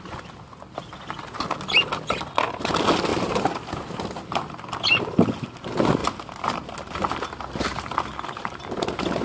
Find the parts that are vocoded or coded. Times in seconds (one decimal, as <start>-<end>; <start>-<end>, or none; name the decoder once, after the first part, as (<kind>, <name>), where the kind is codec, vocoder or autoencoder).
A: none